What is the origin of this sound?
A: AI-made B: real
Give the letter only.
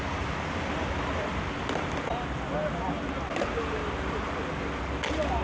B